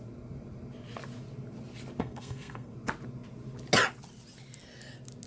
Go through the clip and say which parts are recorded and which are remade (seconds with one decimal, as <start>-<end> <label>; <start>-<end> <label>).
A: 0.0-2.0 recorded; 2.0-2.7 remade; 2.7-5.3 recorded